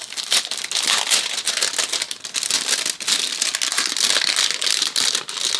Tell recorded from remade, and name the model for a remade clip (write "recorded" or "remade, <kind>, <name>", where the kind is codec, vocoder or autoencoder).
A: recorded